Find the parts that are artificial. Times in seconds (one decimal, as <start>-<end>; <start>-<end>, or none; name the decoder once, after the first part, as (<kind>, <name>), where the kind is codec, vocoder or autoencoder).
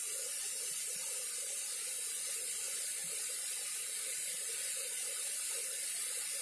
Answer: 3.0-6.4 (vocoder, BigVGAN v2)